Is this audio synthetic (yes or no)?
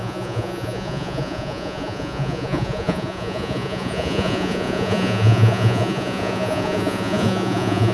yes